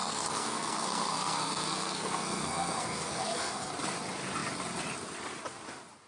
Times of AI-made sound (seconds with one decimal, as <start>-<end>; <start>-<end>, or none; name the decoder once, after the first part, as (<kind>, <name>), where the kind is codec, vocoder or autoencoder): 0.0-3.7 (codec, SNAC)